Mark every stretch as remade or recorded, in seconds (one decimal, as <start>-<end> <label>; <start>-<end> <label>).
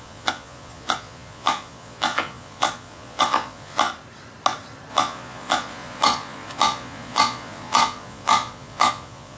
0.0-3.9 remade; 3.9-4.9 recorded; 4.9-9.4 remade